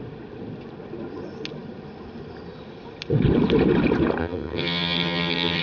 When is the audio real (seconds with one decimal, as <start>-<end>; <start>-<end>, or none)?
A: 0.0-4.2